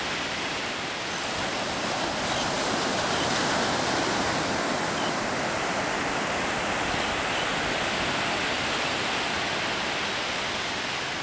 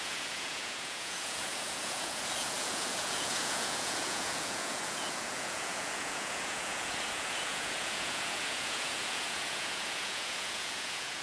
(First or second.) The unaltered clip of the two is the first